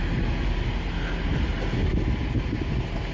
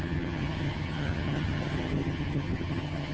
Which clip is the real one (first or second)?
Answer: first